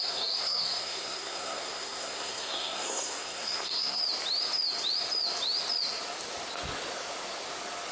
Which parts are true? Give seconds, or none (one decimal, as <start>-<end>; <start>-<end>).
4.0-7.9